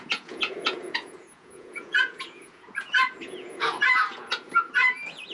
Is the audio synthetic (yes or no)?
yes